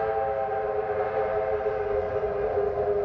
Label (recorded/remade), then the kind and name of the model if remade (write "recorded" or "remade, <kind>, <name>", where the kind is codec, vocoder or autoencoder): recorded